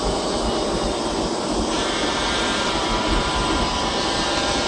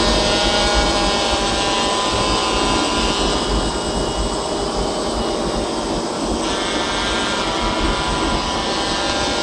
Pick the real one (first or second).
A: second